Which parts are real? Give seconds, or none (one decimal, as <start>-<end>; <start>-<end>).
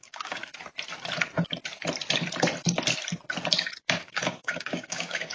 0.4-3.6